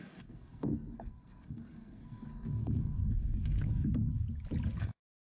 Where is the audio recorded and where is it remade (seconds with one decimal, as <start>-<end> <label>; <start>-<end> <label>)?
0.0-3.9 remade; 3.9-4.8 recorded; 4.8-5.3 remade